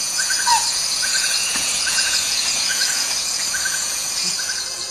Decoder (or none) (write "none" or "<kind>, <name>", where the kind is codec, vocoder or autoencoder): vocoder, Vocos